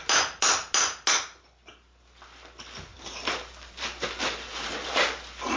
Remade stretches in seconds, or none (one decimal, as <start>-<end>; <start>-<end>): 2.9-5.6